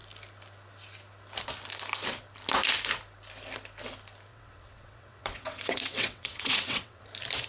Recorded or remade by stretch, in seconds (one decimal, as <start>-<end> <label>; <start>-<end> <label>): 0.0-4.3 recorded; 4.3-7.0 remade; 7.0-7.5 recorded